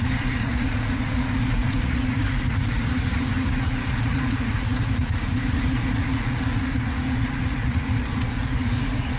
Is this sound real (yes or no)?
no